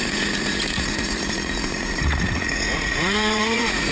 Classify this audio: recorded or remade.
remade